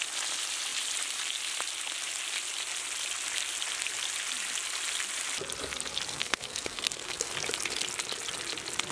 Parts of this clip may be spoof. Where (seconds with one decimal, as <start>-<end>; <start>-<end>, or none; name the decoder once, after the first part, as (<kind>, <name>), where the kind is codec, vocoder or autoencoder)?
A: 6.1-7.3 (codec, SNAC)